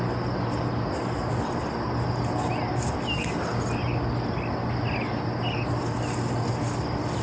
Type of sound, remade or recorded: recorded